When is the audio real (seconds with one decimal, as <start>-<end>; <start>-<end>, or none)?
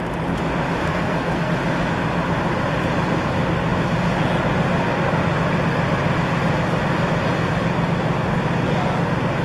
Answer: 0.0-0.8; 1.5-9.4